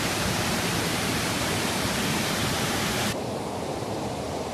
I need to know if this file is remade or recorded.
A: remade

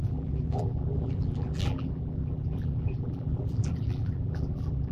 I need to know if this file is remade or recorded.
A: remade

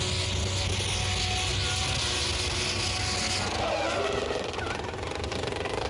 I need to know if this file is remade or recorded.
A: recorded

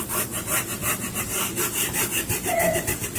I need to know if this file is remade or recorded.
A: remade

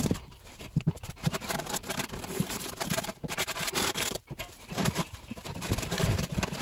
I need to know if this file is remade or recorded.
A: remade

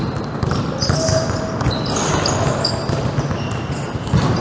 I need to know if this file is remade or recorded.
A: recorded